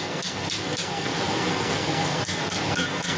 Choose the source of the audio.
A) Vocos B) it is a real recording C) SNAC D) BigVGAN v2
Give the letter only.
C